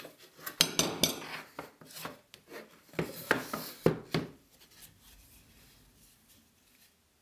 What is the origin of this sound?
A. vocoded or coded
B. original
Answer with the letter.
B